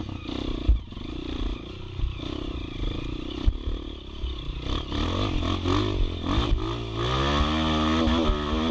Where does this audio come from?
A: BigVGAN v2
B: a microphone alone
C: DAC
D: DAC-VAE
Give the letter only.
B